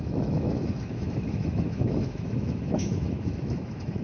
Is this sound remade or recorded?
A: remade